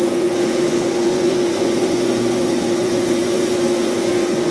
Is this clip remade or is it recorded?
remade